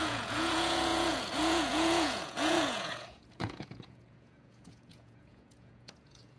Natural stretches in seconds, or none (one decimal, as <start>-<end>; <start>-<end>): none